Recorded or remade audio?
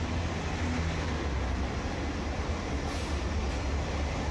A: recorded